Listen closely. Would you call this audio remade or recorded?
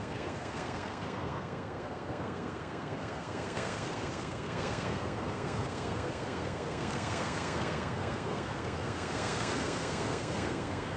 remade